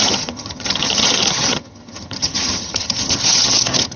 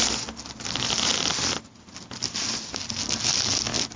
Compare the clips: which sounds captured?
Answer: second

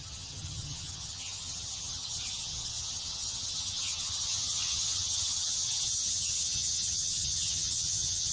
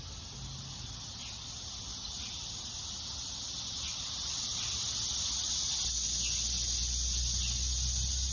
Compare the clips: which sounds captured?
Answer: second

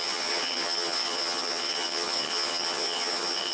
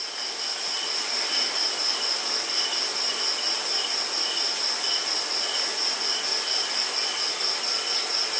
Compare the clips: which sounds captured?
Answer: second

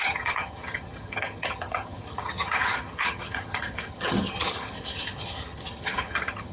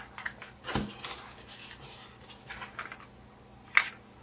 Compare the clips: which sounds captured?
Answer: second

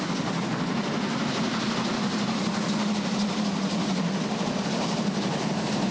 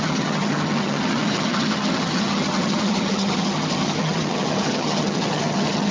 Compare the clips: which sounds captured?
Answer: first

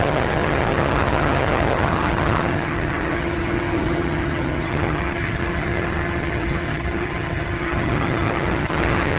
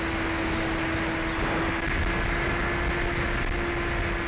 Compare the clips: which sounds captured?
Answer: second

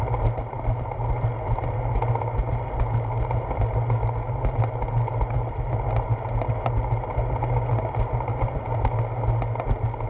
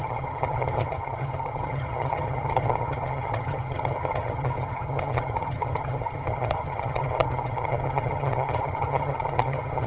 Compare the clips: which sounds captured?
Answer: first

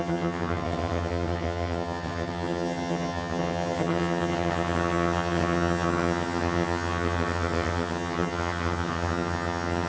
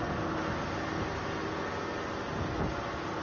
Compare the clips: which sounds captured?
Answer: second